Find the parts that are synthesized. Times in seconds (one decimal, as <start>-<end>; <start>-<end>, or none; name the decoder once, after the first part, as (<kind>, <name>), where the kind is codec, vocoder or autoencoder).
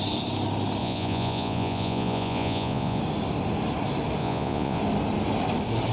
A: 0.8-3.0 (vocoder, Vocos); 4.2-4.8